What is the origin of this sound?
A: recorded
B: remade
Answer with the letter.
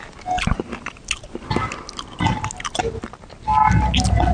A